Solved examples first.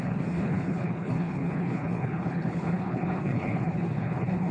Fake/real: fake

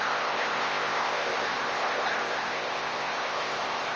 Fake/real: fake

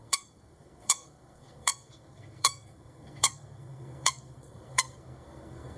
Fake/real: fake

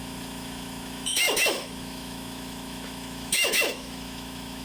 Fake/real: fake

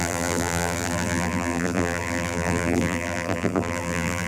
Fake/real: fake